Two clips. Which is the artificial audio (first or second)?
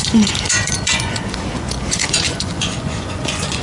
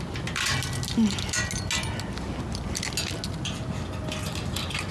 first